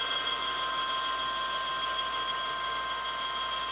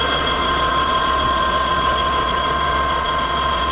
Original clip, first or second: first